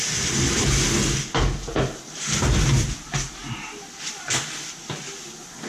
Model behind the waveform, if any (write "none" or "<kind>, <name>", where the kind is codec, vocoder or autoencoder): none